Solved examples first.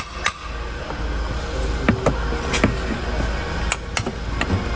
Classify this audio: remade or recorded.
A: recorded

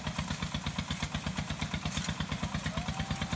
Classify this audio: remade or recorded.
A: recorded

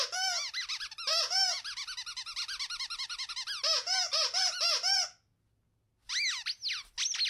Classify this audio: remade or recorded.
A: recorded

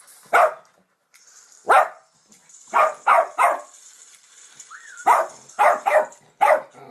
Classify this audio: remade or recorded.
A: remade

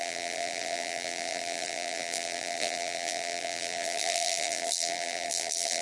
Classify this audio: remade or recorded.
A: remade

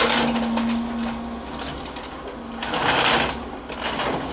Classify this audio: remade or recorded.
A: recorded